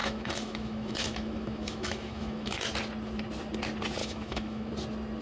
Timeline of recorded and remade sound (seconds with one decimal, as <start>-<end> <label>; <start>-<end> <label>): 0.0-2.6 remade; 2.6-4.0 recorded; 4.0-4.7 remade; 4.7-5.2 recorded